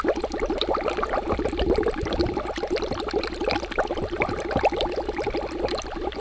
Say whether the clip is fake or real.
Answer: real